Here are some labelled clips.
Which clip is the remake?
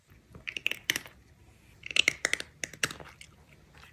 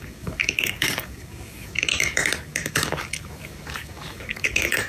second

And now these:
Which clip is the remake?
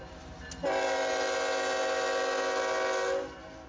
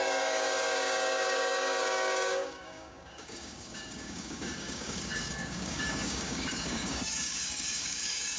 second